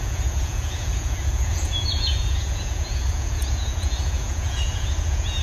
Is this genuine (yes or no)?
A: no